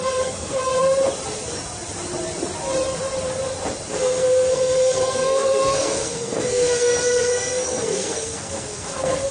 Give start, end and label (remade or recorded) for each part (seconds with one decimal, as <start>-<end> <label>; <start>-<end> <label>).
0.0-0.7 remade; 0.7-3.9 recorded; 3.9-9.3 remade

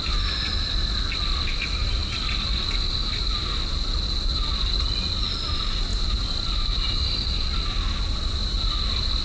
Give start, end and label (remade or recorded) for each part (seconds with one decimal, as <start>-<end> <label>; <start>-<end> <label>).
0.0-9.2 recorded

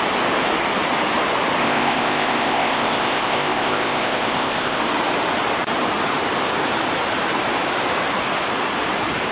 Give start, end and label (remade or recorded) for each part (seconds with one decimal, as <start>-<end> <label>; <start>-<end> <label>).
0.0-1.6 recorded; 1.6-4.8 remade; 4.8-9.3 recorded

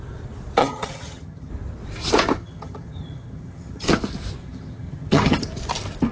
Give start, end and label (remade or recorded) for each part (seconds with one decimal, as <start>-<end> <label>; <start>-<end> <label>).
0.0-0.6 recorded; 0.6-1.5 remade; 1.5-2.4 recorded; 2.4-3.9 remade; 3.9-4.4 recorded; 4.4-5.4 remade; 5.4-6.1 recorded

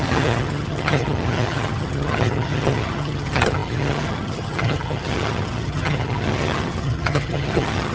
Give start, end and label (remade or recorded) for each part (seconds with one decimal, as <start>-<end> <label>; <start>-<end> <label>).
0.0-7.9 remade

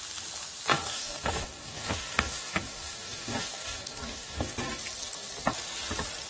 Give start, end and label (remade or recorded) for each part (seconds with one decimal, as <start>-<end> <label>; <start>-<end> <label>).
0.0-0.7 recorded; 0.7-4.5 remade; 4.5-6.3 recorded

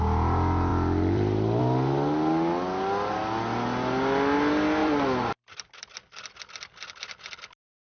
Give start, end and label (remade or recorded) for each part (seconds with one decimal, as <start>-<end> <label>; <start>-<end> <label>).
0.0-0.7 recorded; 0.7-1.6 remade; 1.6-4.8 recorded; 4.8-6.0 remade; 6.0-8.0 recorded